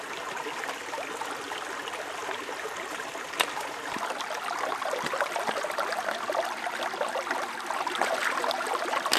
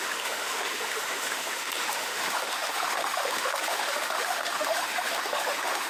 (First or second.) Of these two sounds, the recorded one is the first